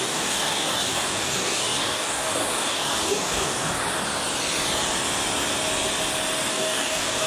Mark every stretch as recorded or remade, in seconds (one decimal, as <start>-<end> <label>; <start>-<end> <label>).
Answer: 0.0-3.8 remade; 3.8-6.5 recorded; 6.5-7.3 remade